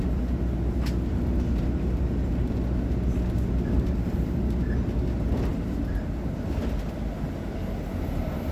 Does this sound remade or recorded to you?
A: recorded